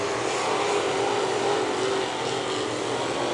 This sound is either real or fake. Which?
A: real